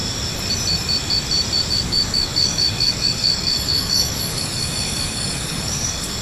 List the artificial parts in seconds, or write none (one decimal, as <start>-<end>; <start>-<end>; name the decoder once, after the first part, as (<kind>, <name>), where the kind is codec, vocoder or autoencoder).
1.7-6.2 (codec, DAC)